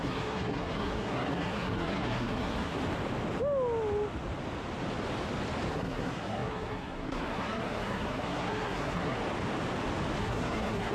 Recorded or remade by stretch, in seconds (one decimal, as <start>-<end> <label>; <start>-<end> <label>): 0.0-2.8 remade; 2.8-5.7 recorded; 5.7-9.2 remade; 9.2-10.2 recorded; 10.2-10.9 remade